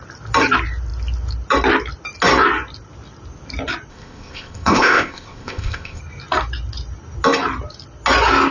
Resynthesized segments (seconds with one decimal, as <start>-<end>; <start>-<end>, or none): 3.9-6.0